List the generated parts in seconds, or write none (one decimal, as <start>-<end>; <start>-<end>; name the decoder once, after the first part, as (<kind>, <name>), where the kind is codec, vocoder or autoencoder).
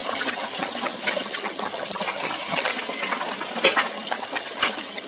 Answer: 0.0-2.7 (vocoder, HiFi-GAN); 3.9-5.1